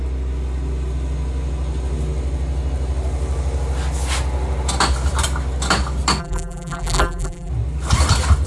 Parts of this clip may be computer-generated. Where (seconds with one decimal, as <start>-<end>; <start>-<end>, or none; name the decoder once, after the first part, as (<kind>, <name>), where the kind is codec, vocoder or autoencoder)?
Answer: 6.2-7.5 (vocoder, BigVGAN v2)